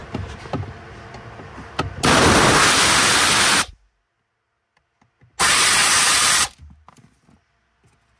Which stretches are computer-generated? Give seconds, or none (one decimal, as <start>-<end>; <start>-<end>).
none